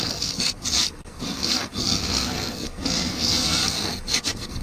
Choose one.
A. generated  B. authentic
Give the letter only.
A